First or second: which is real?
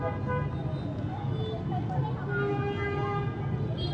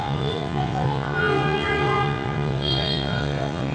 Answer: first